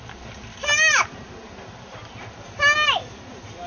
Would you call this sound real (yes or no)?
yes